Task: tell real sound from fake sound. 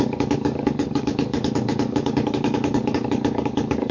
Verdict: fake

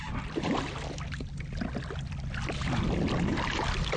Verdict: real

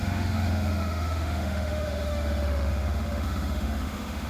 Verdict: fake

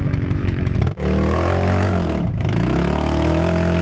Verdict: fake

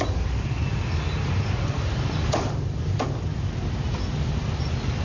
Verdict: real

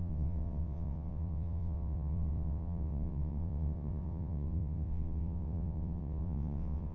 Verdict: fake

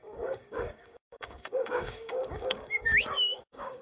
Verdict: fake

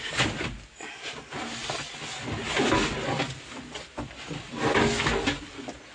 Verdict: real